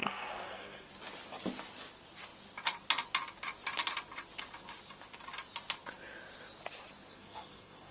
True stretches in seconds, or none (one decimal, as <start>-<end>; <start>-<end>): 0.9-7.1